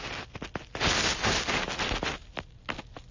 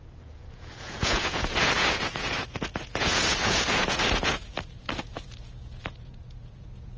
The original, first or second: first